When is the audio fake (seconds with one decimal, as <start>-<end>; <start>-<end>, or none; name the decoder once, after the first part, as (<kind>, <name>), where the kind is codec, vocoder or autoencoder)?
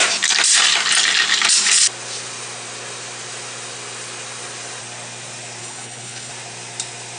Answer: 5.6-6.3 (codec, HILCodec)